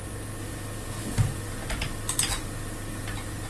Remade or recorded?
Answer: recorded